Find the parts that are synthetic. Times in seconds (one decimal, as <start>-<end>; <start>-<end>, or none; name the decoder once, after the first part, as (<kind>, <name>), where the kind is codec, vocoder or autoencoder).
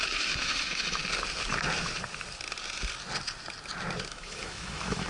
0.0-1.0 (autoencoder, DAC-VAE); 4.1-5.1